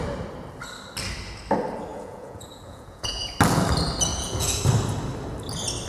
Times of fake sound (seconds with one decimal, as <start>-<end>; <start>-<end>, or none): 1.9-3.3; 4.1-4.6